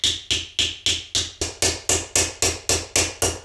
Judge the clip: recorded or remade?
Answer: recorded